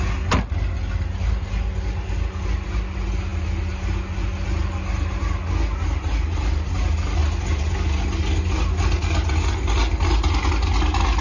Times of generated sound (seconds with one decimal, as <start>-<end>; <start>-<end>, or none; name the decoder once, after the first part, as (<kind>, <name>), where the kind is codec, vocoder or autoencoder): none